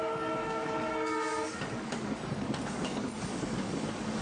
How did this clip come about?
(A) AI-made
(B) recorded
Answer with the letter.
A